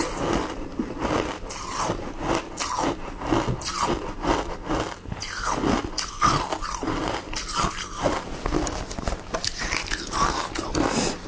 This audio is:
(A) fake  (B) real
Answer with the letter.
B